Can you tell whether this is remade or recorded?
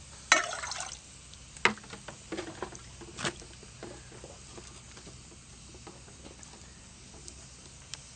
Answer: recorded